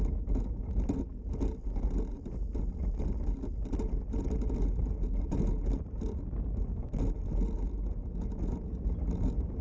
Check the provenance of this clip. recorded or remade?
recorded